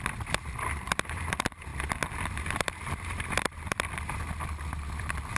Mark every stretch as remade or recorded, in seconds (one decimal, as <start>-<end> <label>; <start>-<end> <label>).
0.0-5.4 recorded